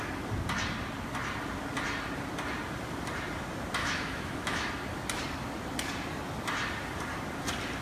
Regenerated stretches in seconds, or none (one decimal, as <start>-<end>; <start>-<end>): 3.8-4.7